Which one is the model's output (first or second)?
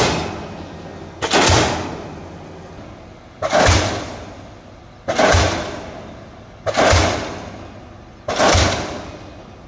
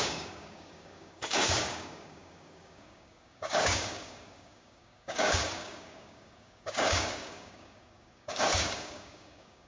second